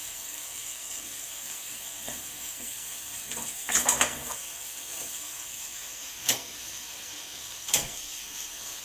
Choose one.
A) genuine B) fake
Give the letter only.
B